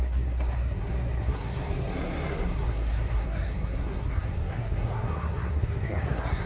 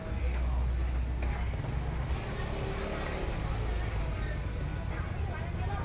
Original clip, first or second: second